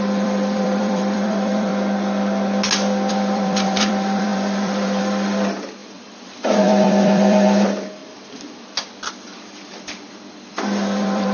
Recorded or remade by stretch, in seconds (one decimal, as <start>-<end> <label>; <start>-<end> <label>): 0.0-1.7 remade; 1.7-3.1 recorded; 3.1-8.0 remade; 8.0-9.1 recorded; 9.1-11.3 remade